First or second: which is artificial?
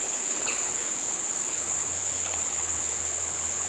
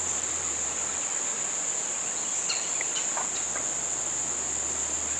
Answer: first